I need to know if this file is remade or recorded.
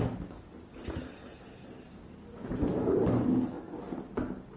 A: recorded